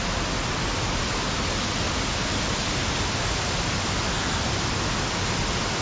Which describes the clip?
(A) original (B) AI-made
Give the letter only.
A